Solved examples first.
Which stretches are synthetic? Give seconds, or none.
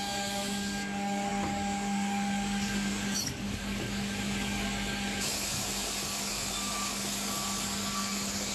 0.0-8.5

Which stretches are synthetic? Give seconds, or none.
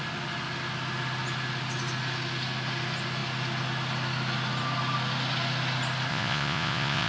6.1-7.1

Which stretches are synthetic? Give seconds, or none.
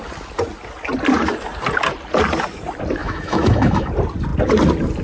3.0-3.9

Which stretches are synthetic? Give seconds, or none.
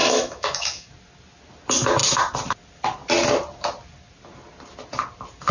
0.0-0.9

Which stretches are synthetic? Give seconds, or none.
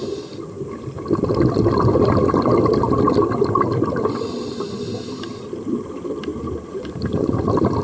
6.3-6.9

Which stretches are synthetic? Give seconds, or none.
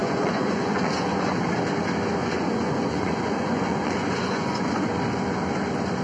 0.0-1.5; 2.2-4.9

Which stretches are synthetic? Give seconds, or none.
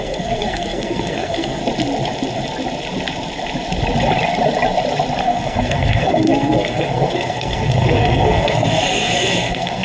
0.0-1.6; 5.2-9.8